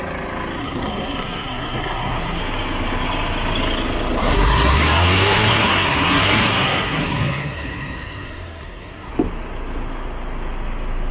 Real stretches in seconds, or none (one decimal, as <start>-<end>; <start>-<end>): 0.0-0.6; 2.4-4.2; 9.1-11.1